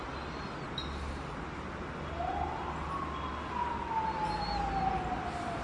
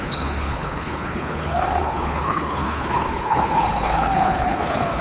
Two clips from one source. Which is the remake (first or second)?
second